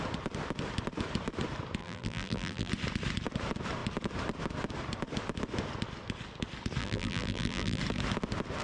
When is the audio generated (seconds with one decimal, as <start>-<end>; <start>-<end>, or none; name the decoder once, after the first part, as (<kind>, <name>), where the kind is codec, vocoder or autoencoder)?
1.8-2.7 (vocoder, BigVGAN v2); 6.8-7.8